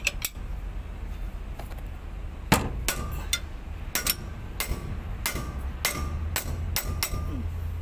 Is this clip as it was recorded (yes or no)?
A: yes